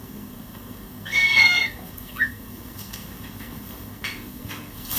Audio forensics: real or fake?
fake